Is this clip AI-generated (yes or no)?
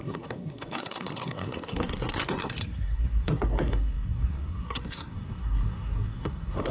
yes